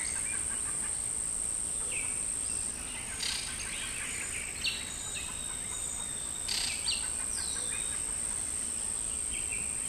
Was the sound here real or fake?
real